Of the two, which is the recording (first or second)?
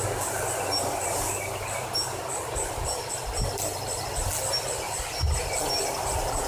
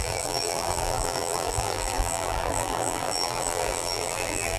first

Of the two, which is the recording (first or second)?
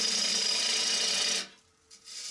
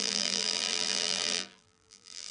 first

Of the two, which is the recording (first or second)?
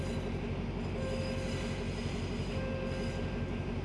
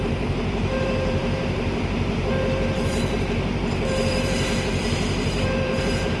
first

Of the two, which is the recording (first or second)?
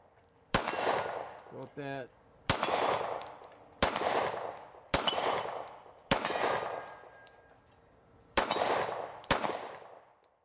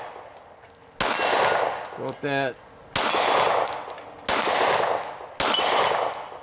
second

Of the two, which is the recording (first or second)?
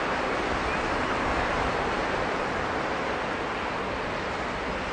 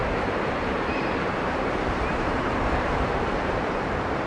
first